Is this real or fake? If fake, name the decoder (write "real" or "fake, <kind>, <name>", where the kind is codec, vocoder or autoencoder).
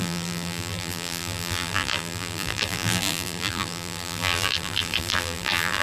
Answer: fake, vocoder, BigVGAN v2